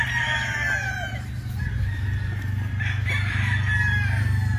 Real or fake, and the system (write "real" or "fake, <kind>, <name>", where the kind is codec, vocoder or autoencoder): real